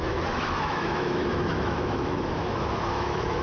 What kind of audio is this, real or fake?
fake